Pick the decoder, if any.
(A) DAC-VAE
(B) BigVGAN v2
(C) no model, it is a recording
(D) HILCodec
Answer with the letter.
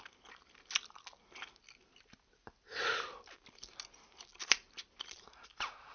C